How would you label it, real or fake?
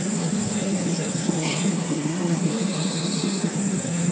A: fake